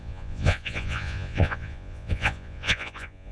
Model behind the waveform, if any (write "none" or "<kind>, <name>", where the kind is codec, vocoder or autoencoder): vocoder, Vocos